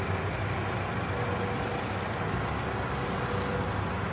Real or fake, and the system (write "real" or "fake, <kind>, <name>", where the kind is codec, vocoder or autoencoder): real